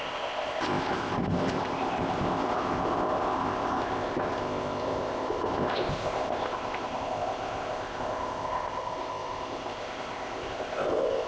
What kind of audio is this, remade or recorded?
remade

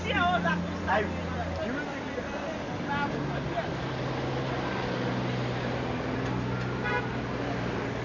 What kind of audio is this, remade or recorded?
recorded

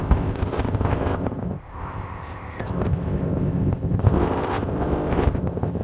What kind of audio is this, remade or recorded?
remade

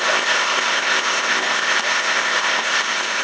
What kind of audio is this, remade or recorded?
remade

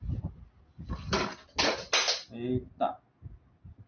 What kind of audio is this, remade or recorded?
recorded